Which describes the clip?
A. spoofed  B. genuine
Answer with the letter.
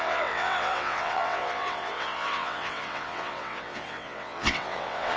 A